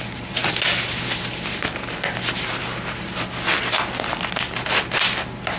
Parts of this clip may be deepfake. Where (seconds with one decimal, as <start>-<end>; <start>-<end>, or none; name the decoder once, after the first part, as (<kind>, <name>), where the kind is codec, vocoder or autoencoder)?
none